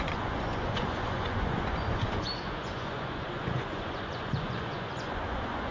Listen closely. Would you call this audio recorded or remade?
remade